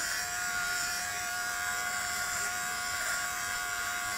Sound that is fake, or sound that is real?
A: fake